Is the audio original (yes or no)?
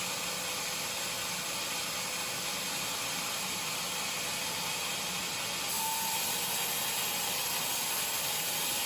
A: yes